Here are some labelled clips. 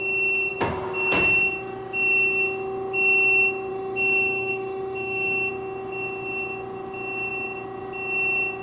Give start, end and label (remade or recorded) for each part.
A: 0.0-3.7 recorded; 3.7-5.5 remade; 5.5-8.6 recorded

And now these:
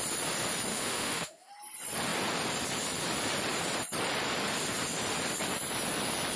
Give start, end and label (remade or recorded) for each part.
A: 0.0-0.7 recorded; 0.7-1.5 remade; 1.5-6.4 recorded